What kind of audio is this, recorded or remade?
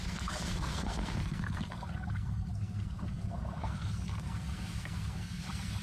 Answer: remade